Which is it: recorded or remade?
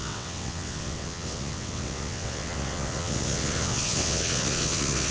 remade